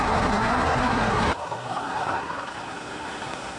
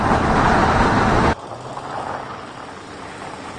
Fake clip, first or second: first